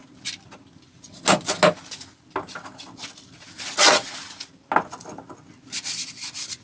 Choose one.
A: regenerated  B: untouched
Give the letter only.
B